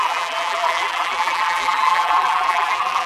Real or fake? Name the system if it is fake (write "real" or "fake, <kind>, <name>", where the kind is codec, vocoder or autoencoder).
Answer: fake, vocoder, BigVGAN v2